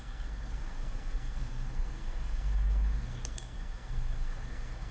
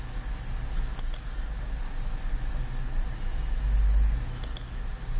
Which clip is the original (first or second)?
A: second